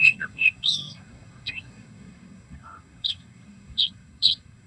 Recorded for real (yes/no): no